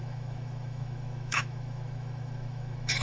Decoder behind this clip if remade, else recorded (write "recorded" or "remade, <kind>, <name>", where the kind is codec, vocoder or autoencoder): remade, autoencoder, DAC-VAE